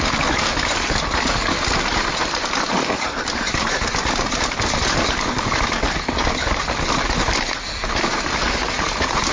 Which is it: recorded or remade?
recorded